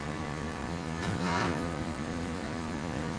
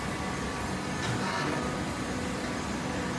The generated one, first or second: first